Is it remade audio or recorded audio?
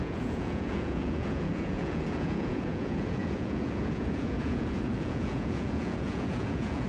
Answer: remade